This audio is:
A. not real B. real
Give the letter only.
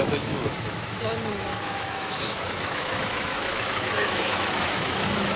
A